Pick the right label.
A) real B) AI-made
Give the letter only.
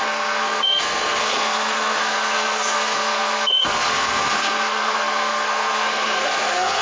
B